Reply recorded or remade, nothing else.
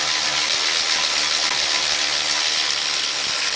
recorded